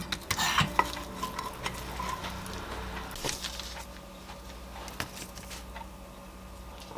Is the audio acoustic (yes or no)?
yes